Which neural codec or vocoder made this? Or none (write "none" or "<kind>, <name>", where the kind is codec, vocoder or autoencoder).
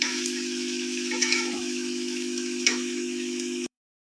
autoencoder, DAC-VAE